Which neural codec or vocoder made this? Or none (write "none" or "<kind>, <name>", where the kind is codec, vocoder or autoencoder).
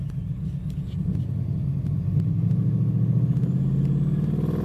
none